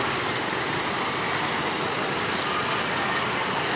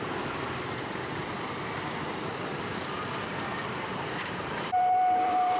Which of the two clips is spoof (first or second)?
second